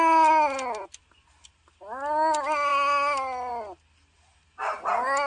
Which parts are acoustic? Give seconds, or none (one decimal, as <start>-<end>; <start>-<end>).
0.0-5.3